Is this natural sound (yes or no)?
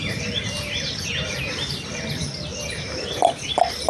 yes